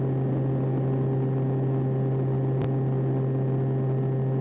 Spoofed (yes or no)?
no